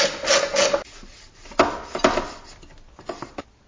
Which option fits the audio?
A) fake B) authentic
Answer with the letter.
B